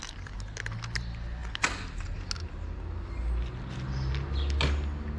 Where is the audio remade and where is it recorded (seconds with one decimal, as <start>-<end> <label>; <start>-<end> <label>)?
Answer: 0.0-5.2 recorded